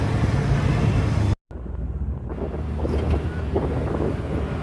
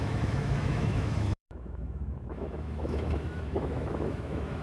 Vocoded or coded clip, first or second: second